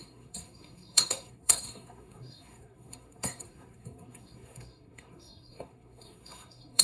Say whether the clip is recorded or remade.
remade